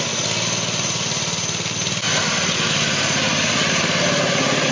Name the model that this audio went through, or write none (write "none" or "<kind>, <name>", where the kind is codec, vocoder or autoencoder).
none